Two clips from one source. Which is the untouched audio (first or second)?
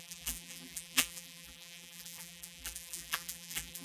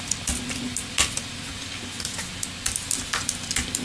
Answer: second